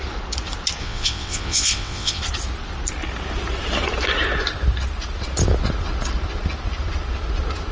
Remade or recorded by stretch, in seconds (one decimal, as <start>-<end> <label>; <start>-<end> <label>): 0.0-0.8 recorded; 0.8-2.2 remade; 2.2-7.7 recorded